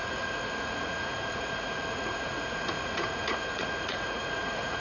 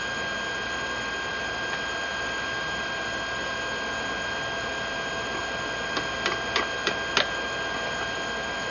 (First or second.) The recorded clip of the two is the second